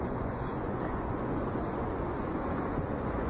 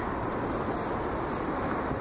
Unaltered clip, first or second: second